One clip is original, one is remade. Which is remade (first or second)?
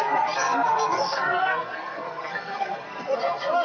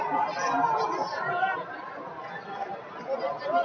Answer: first